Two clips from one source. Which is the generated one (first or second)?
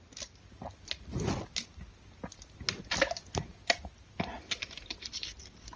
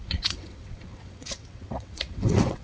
second